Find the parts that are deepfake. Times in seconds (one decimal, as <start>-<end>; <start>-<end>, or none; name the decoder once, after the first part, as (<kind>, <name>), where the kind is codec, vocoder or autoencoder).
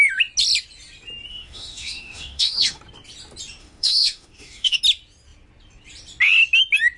1.3-2.8 (autoencoder, DAC-VAE); 3.6-4.8